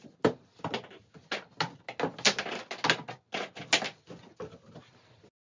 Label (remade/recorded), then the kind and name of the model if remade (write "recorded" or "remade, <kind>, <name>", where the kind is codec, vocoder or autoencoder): recorded